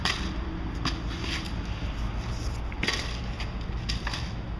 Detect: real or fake real